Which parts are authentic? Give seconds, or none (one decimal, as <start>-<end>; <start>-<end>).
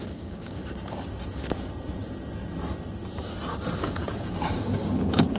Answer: 0.6-3.8